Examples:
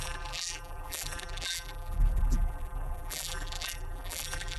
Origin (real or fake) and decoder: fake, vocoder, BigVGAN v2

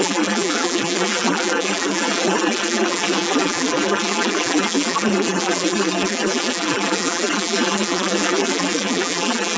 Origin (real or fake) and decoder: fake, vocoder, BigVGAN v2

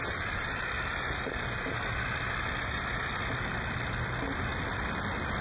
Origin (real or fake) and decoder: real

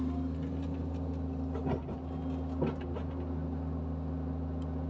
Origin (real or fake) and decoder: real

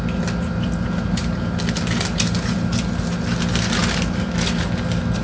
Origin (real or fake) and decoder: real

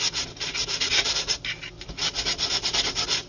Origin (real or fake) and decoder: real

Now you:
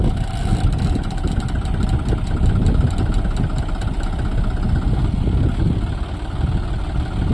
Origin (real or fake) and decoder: real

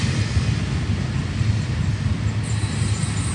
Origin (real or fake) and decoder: real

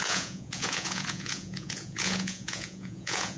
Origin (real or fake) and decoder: fake, vocoder, Vocos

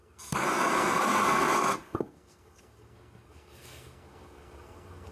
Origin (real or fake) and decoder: fake, codec, SNAC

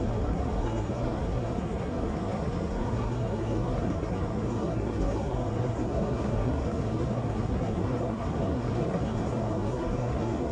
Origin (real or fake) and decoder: fake, codec, SNAC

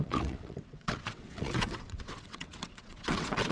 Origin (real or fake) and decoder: fake, vocoder, WaveNeXt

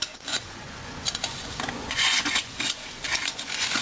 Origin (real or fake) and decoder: fake, vocoder, Vocos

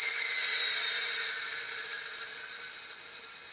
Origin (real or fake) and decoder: real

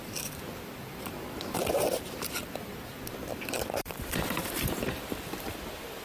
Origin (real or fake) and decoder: fake, vocoder, BigVGAN v2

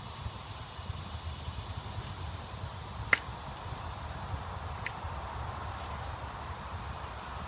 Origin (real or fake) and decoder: real